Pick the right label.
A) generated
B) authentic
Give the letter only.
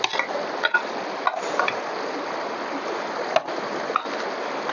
B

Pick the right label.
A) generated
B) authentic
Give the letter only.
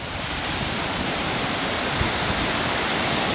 A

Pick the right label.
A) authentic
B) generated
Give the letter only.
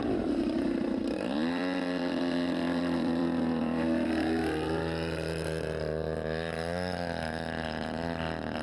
B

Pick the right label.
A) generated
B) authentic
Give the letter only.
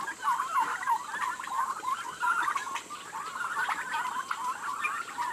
A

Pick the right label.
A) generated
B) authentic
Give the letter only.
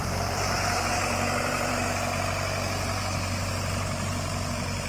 A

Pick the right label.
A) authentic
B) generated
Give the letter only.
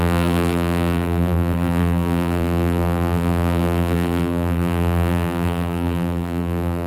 B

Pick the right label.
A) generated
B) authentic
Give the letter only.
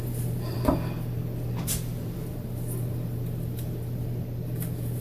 A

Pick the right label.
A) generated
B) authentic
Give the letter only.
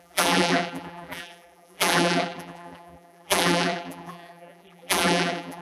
A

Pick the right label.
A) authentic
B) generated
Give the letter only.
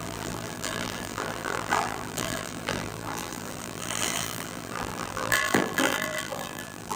B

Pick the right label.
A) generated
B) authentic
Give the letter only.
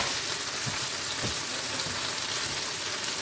B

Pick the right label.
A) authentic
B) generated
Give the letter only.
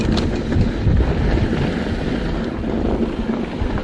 A